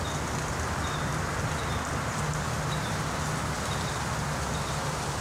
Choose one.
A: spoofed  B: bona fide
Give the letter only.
B